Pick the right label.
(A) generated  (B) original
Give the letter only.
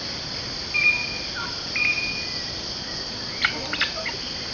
B